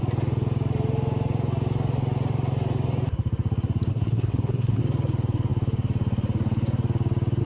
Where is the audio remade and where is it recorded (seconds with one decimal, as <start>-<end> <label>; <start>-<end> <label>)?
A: 0.0-3.9 recorded; 3.9-4.8 remade; 4.8-7.4 recorded